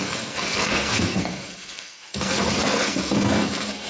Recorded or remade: remade